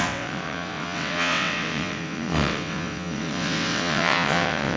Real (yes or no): no